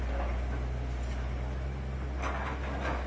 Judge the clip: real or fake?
real